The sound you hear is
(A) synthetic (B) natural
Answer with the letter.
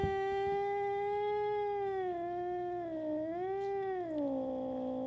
B